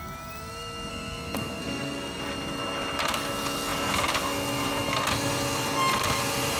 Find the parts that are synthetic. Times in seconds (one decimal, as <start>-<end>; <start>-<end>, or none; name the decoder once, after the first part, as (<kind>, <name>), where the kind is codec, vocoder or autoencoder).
0.9-2.2 (codec, SNAC)